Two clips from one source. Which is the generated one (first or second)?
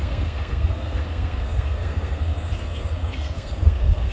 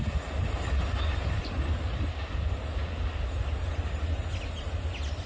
first